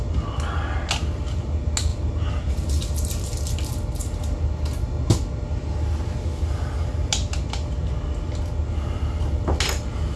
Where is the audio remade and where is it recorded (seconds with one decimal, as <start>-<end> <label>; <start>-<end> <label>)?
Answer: 0.0-10.2 recorded